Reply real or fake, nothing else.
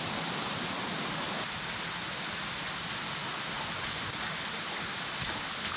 real